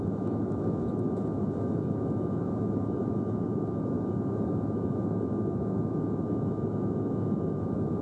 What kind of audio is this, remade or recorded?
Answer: remade